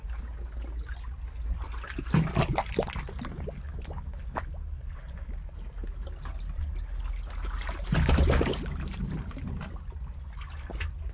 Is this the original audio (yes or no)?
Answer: yes